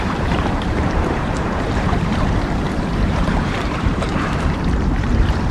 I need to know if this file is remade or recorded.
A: remade